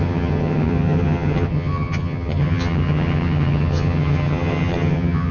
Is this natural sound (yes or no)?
no